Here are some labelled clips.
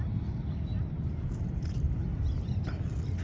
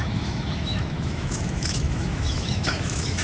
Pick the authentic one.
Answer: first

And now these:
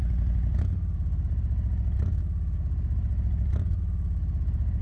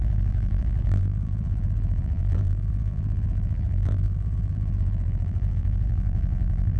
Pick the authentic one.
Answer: first